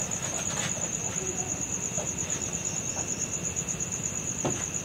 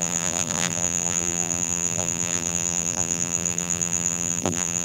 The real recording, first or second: first